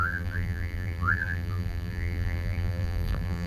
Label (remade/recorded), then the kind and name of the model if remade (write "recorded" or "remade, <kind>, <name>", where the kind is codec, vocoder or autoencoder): remade, vocoder, BigVGAN v2